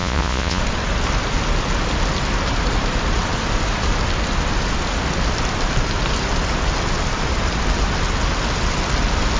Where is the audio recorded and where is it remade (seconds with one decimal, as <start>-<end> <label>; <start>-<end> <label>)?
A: 0.0-0.6 remade; 0.6-9.4 recorded